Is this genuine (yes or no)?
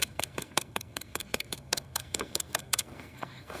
no